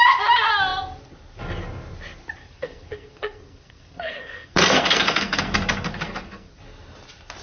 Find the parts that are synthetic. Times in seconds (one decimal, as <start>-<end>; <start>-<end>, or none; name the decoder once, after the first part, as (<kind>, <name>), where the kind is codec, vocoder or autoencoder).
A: 2.4-6.5 (codec, SNAC)